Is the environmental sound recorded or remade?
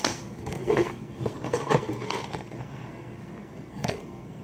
remade